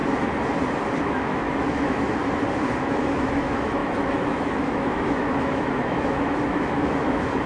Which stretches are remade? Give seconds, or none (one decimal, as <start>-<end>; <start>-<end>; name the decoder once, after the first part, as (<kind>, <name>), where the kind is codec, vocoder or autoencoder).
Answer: 1.0-2.2 (autoencoder, DAC-VAE); 2.8-7.5